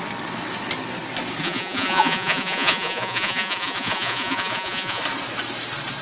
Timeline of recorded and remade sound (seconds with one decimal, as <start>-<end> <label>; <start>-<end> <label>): 0.0-1.4 recorded; 1.4-5.0 remade; 5.0-6.0 recorded